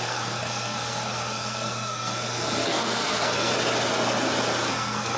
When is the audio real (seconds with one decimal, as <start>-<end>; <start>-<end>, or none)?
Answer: 3.5-4.7